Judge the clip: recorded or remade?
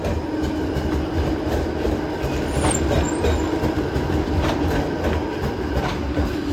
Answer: recorded